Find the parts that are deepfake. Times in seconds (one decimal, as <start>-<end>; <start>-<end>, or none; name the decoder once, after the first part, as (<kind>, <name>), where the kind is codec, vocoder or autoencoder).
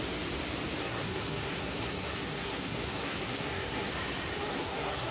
0.8-3.9 (codec, SNAC); 4.5-5.1